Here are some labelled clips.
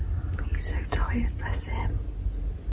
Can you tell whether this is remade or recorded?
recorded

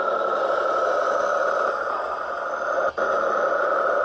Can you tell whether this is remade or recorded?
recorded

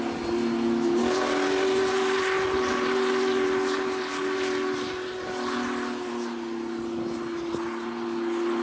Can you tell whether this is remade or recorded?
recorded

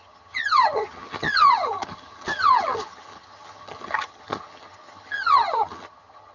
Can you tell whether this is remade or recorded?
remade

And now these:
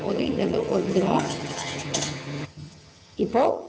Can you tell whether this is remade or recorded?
remade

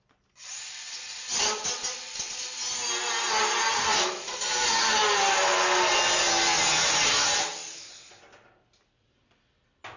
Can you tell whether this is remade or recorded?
recorded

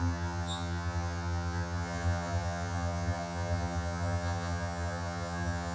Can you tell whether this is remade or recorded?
remade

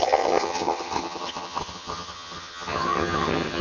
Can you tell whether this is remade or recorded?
remade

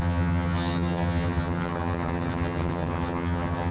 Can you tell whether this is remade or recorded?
remade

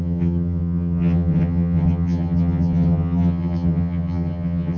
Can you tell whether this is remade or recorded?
remade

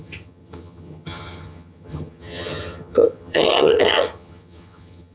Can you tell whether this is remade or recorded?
remade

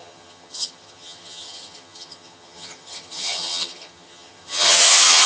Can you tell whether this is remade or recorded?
remade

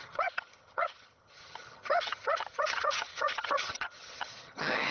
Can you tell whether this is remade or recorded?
remade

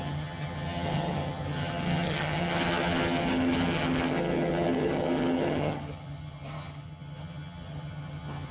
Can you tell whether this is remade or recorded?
remade